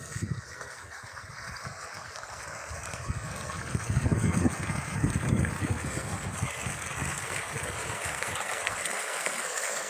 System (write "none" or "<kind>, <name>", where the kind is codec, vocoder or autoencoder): codec, SNAC